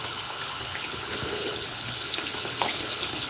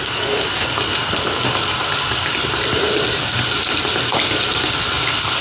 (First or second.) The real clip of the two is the second